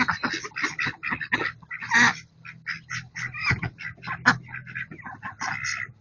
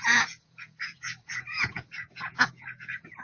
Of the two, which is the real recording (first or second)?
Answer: first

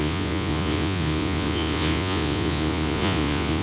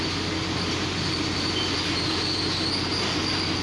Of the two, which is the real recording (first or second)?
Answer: second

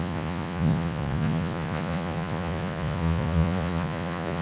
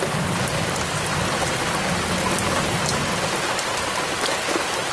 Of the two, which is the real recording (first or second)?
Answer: second